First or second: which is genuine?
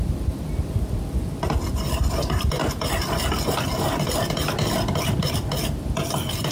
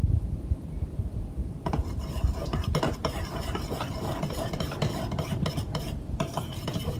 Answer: first